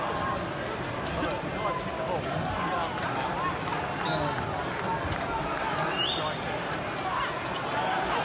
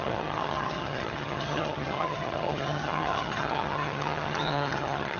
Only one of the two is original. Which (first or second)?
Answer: first